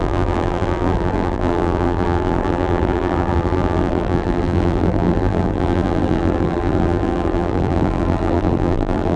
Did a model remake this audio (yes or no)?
yes